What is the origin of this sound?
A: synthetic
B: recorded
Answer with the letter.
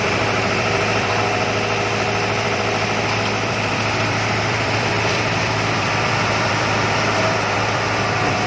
A